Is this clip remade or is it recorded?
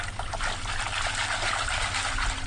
recorded